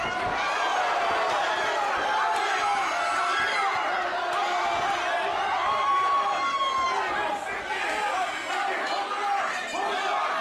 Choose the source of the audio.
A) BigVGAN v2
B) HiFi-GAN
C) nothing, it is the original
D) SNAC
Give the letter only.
C